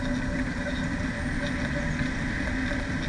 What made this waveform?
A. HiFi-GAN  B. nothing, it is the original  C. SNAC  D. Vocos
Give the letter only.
B